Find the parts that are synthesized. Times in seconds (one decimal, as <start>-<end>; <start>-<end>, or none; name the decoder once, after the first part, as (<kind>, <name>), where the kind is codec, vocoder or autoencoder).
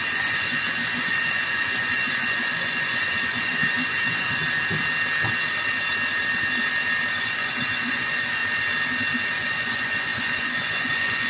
0.0-4.4 (vocoder, Vocos); 7.2-8.4; 9.4-11.3